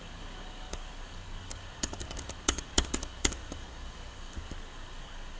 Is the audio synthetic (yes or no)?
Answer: yes